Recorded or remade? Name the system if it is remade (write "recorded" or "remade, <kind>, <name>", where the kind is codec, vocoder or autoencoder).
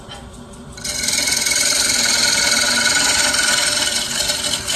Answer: remade, vocoder, BigVGAN v2